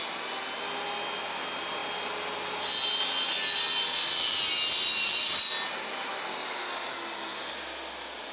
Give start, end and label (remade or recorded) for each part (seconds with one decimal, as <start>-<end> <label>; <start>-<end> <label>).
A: 0.0-8.3 recorded